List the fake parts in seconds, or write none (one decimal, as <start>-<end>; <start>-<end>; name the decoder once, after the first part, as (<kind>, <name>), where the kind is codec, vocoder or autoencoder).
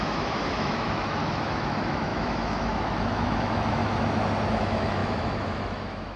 0.0-3.8 (autoencoder, DAC-VAE); 4.5-6.2